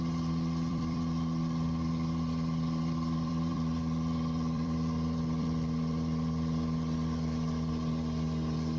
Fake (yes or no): yes